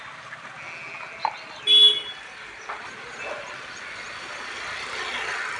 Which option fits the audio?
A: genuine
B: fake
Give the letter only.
A